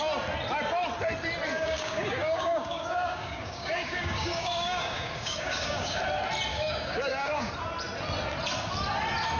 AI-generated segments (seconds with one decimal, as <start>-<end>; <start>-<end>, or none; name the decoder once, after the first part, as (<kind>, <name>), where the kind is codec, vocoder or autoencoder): 1.5-6.0 (codec, DAC); 6.5-7.5